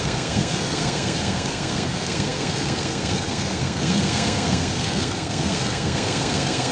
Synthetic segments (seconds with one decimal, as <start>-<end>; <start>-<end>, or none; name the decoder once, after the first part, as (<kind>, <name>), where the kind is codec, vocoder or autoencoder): 0.0-6.7 (codec, SNAC)